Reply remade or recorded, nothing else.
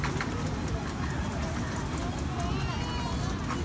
recorded